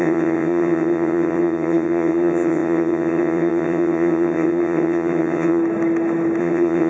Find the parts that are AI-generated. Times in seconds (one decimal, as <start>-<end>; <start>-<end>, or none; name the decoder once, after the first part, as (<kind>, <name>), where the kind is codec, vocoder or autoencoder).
0.0-5.6 (vocoder, HiFi-GAN); 6.4-6.9